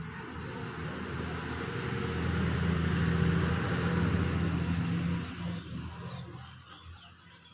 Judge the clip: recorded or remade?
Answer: recorded